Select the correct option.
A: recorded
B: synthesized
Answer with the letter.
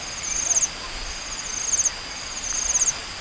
A